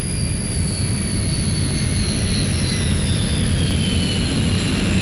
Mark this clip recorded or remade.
recorded